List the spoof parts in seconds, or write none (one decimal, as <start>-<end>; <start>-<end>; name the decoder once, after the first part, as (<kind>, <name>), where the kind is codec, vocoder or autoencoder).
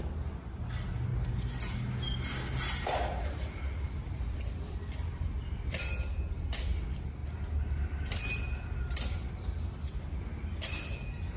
none